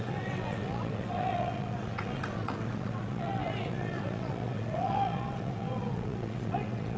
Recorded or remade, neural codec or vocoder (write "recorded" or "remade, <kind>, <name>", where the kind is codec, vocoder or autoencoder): remade, vocoder, WaveNeXt